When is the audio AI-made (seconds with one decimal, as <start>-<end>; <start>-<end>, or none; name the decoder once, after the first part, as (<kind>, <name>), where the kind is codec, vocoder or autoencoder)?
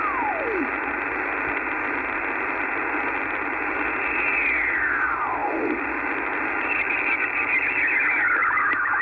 none